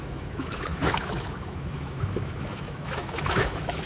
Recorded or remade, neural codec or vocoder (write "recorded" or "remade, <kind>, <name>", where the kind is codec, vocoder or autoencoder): remade, autoencoder, DAC-VAE